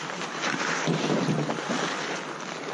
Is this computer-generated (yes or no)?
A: no